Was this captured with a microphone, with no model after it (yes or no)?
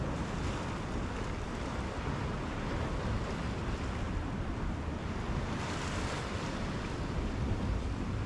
yes